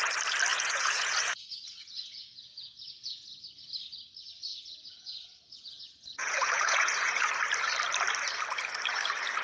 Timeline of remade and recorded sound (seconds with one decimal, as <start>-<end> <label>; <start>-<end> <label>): 0.0-0.5 recorded; 0.5-3.4 remade; 3.4-4.5 recorded; 4.5-7.3 remade; 7.3-9.4 recorded